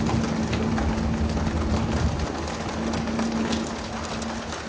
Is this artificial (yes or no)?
no